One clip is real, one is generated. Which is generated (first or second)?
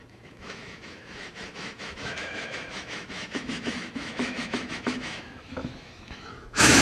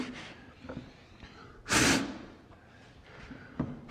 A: first